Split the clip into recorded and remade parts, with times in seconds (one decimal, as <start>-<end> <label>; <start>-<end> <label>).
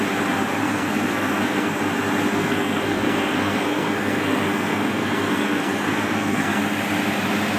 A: 0.0-0.6 recorded; 0.6-1.8 remade; 1.8-2.3 recorded; 2.3-6.6 remade; 6.6-7.6 recorded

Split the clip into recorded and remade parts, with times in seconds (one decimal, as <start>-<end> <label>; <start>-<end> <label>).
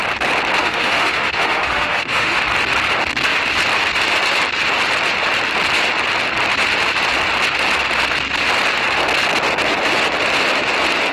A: 0.0-0.6 recorded; 0.6-2.4 remade; 2.4-11.1 recorded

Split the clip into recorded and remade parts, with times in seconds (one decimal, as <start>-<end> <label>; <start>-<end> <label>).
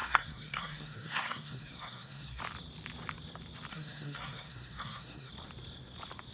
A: 0.0-2.4 remade; 2.4-3.7 recorded; 3.7-5.3 remade; 5.3-6.3 recorded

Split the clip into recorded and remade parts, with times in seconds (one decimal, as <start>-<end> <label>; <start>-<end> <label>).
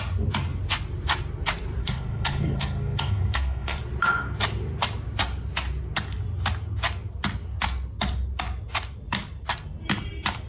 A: 0.0-1.8 recorded; 1.8-3.8 remade; 3.8-10.5 recorded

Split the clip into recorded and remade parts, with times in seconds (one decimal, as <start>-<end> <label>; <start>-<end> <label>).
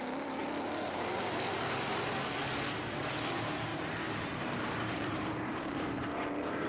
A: 0.0-0.4 recorded; 0.4-1.2 remade; 1.2-3.7 recorded; 3.7-6.7 remade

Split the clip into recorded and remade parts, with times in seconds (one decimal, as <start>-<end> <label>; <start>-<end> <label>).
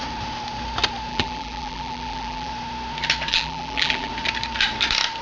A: 0.0-1.1 recorded; 1.1-2.5 remade; 2.5-3.3 recorded; 3.3-4.1 remade; 4.1-5.2 recorded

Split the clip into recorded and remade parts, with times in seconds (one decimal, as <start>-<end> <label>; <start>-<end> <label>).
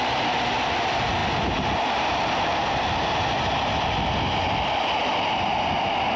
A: 0.0-6.2 recorded